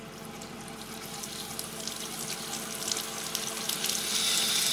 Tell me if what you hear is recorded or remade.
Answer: recorded